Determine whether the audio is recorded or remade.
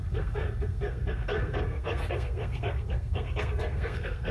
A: remade